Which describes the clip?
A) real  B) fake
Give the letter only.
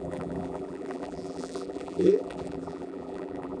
B